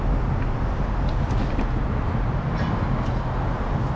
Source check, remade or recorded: recorded